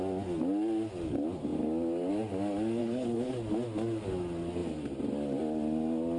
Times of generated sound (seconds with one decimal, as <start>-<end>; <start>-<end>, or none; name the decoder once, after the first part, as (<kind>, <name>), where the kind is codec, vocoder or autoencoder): 2.8-3.3 (codec, HILCodec)